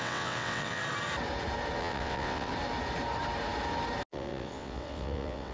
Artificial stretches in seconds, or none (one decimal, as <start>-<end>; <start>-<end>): 0.0-0.8; 1.8-2.5; 4.1-5.5